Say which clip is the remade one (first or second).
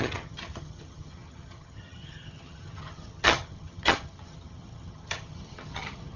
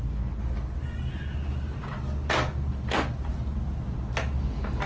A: first